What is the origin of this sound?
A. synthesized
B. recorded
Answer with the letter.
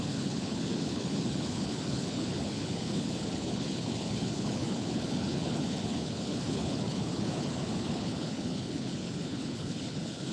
A